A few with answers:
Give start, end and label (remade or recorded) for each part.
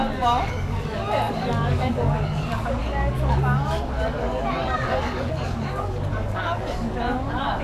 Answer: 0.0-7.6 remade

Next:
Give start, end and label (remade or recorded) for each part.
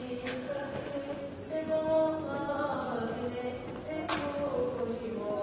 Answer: 0.0-1.2 remade; 1.2-5.4 recorded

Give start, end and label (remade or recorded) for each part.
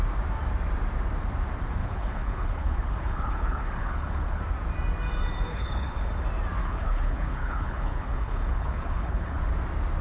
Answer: 0.0-1.8 recorded; 1.8-4.4 remade; 4.4-5.5 recorded; 5.5-6.1 remade; 6.1-6.6 recorded; 6.6-9.5 remade; 9.5-10.0 recorded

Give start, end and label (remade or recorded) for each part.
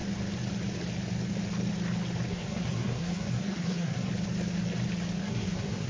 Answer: 0.0-2.3 recorded; 2.3-4.1 remade; 4.1-5.2 recorded; 5.2-5.9 remade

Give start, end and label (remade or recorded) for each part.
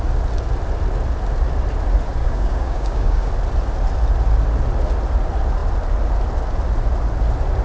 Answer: 0.0-2.2 recorded; 2.2-3.3 remade; 3.3-7.6 recorded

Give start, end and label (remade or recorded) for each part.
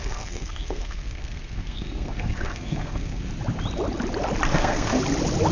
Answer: 0.0-3.3 remade; 3.3-4.5 recorded; 4.5-5.0 remade; 5.0-5.5 recorded